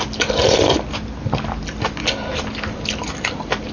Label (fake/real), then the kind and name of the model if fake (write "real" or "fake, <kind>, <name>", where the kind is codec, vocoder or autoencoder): real